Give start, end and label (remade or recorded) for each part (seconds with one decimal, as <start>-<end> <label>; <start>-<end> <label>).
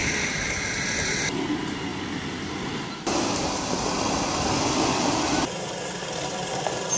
0.0-7.0 recorded